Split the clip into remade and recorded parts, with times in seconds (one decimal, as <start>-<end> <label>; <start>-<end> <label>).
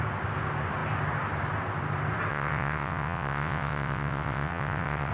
0.0-2.3 recorded; 2.3-5.1 remade